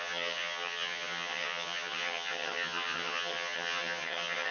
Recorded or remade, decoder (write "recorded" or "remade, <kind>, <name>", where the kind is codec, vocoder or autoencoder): remade, vocoder, HiFi-GAN